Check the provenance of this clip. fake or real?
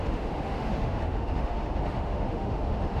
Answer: fake